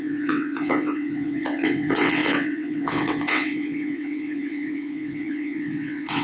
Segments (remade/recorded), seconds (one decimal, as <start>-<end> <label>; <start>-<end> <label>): 0.0-6.2 remade